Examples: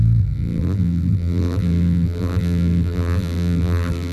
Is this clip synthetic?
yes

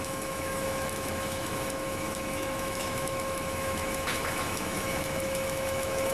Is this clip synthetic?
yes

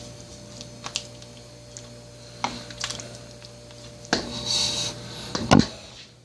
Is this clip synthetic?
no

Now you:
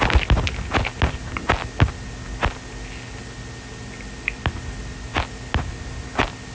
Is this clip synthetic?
no